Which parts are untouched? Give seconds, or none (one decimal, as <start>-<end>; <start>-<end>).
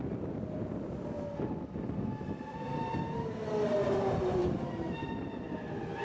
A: 0.0-6.0